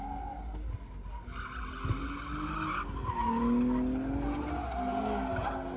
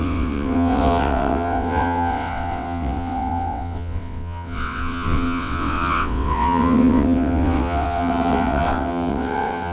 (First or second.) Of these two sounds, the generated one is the second